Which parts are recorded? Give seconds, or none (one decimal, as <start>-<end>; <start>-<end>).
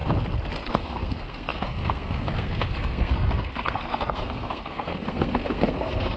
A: 0.0-0.7